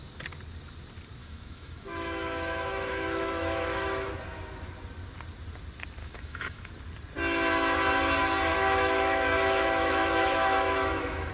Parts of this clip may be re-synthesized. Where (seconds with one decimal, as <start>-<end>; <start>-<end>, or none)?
1.2-4.1; 6.0-6.7; 8.5-11.3